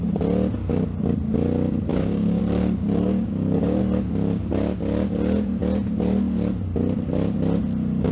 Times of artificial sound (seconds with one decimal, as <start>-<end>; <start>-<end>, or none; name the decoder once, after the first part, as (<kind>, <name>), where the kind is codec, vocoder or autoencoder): 1.9-2.4 (codec, DAC); 2.8-3.8